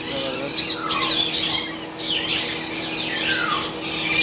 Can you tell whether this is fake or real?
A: real